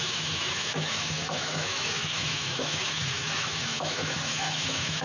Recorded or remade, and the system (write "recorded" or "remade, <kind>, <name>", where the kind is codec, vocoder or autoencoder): remade, autoencoder, DAC-VAE